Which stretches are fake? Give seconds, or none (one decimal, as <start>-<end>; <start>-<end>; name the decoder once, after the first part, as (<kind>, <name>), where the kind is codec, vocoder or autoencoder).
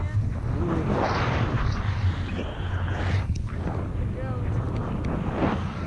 2.5-3.0 (codec, HILCodec)